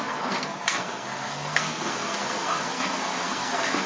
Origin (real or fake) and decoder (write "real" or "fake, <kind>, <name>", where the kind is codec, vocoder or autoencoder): fake, codec, SNAC